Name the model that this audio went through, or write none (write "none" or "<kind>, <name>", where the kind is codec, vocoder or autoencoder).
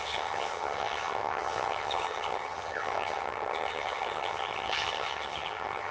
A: vocoder, HiFi-GAN